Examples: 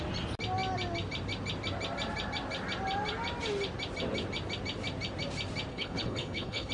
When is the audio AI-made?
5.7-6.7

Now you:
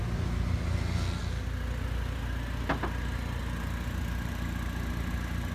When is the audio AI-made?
none

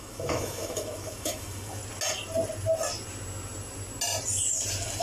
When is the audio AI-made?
0.0-1.8

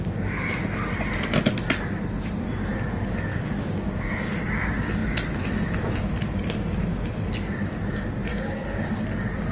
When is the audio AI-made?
3.3-4.0; 8.3-9.0

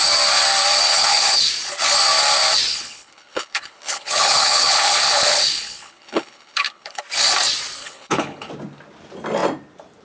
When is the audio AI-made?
0.9-1.5; 2.7-7.0; 7.8-8.5

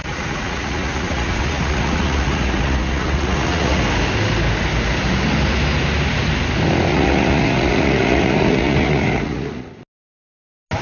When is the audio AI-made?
0.0-3.8; 6.9-9.8